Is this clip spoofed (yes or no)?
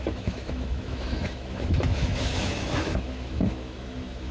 yes